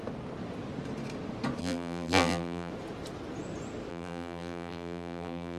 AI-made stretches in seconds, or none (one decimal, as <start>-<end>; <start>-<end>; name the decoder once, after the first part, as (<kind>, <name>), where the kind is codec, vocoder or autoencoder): 1.6-2.7 (vocoder, BigVGAN v2); 3.9-5.6